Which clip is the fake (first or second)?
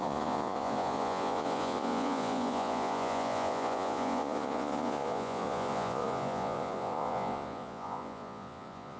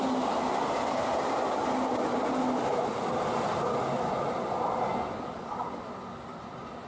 first